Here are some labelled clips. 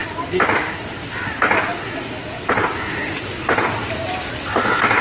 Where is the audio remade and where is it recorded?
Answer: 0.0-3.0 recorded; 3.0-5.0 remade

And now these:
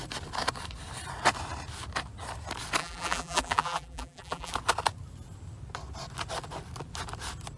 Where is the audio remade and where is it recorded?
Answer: 0.0-2.8 recorded; 2.8-4.5 remade; 4.5-7.6 recorded

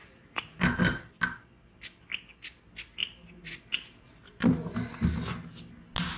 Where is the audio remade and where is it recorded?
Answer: 0.0-0.8 remade; 0.8-3.0 recorded; 3.0-4.5 remade; 4.5-6.2 recorded

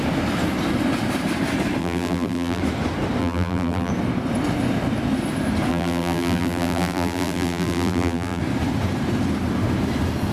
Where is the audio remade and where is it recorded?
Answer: 0.0-1.8 recorded; 1.8-2.6 remade; 2.6-3.2 recorded; 3.2-3.9 remade; 3.9-5.7 recorded; 5.7-8.4 remade; 8.4-10.3 recorded

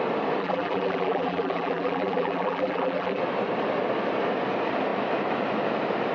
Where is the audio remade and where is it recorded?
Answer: 0.0-0.4 recorded; 0.4-3.2 remade; 3.2-6.1 recorded